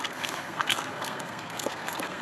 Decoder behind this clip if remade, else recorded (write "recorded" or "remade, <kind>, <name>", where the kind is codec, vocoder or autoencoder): remade, codec, SNAC